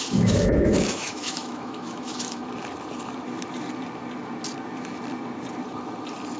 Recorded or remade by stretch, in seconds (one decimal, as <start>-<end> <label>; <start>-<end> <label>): 0.0-2.4 remade; 2.4-6.4 recorded